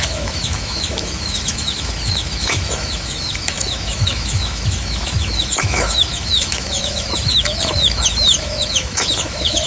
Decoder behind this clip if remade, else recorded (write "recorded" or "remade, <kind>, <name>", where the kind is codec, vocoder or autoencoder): remade, autoencoder, DAC-VAE